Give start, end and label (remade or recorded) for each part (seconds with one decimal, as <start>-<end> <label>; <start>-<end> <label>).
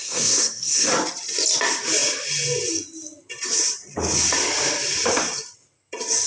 0.0-0.9 remade; 0.9-6.3 recorded